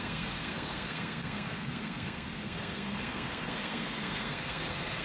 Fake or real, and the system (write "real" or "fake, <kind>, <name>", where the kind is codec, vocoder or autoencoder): fake, codec, SNAC